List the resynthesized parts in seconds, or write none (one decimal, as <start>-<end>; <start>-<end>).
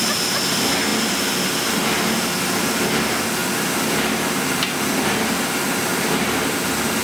none